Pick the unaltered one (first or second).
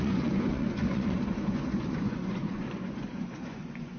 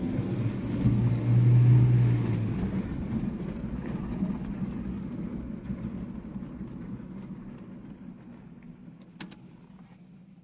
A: second